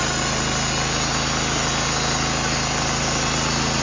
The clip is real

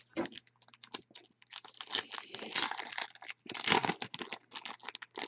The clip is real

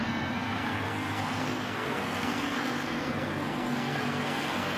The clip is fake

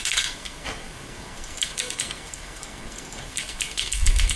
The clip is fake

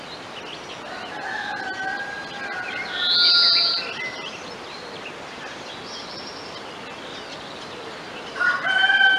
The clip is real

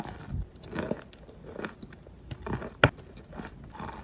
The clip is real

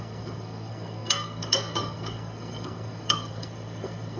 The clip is fake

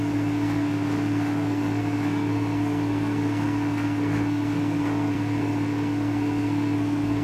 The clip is fake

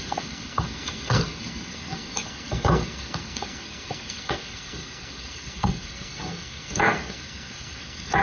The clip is fake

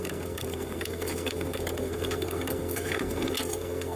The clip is fake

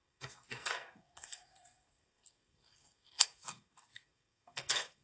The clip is fake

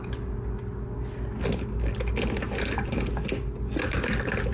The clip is real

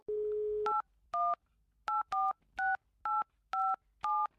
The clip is real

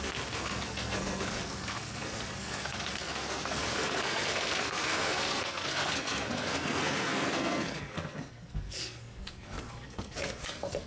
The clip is fake